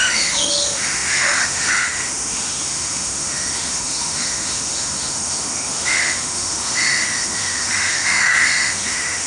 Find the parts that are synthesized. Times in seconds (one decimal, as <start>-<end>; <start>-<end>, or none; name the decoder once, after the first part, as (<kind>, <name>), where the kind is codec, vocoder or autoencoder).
0.0-9.3 (autoencoder, DAC-VAE)